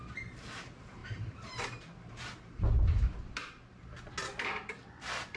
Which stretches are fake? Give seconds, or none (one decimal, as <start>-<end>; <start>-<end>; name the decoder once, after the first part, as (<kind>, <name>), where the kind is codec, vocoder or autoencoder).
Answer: 1.0-3.3 (vocoder, BigVGAN v2); 4.2-4.8